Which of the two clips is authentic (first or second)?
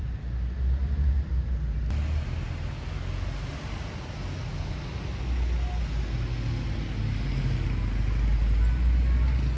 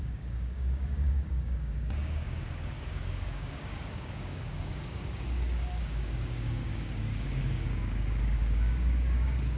first